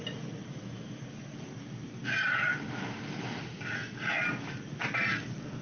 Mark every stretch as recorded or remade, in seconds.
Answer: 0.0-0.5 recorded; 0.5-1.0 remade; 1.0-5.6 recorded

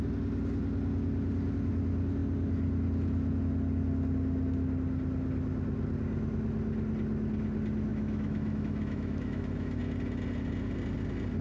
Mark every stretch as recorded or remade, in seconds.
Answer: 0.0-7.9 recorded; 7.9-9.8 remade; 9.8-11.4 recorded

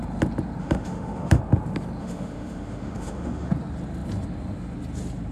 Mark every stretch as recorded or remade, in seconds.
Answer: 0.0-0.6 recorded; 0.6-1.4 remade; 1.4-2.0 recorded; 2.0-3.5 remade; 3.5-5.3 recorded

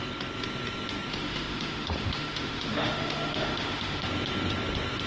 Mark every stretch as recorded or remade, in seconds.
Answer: 0.0-1.1 recorded; 1.1-4.0 remade; 4.0-5.1 recorded

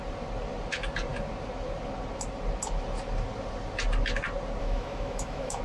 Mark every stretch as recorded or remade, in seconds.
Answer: 0.0-4.6 recorded; 4.6-5.6 remade

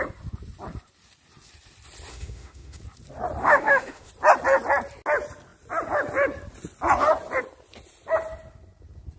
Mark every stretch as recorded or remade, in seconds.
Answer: 0.0-2.1 recorded; 2.1-2.8 remade; 2.8-3.4 recorded; 3.4-4.1 remade; 4.1-9.2 recorded